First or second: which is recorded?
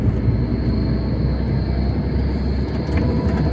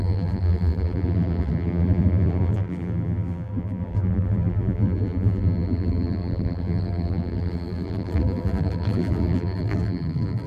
first